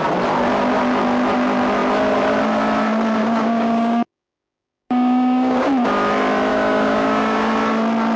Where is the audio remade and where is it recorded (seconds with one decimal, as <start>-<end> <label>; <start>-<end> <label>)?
0.0-3.2 recorded; 3.2-5.7 remade; 5.7-6.5 recorded; 6.5-7.5 remade; 7.5-8.2 recorded